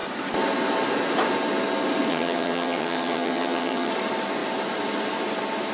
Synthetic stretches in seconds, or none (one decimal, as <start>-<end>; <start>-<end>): 2.1-3.9